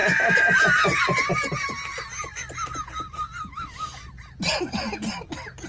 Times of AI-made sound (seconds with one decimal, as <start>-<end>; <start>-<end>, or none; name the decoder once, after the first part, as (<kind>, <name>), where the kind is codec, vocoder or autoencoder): none